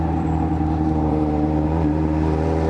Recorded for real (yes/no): no